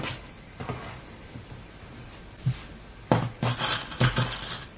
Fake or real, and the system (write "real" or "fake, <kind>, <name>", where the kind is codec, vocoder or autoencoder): real